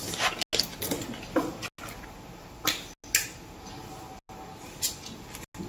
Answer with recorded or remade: recorded